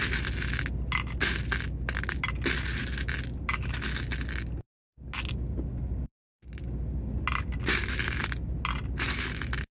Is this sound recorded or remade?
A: recorded